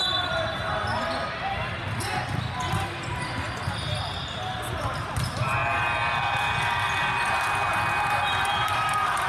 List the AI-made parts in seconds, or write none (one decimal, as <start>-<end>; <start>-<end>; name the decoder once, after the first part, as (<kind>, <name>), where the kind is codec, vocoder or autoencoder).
none